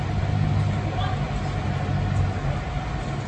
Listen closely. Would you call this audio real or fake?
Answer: real